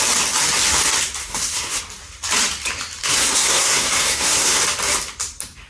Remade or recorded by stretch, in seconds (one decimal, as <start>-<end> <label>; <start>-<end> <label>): 0.0-1.2 recorded; 1.2-1.8 remade; 1.8-3.0 recorded; 3.0-4.6 remade; 4.6-5.7 recorded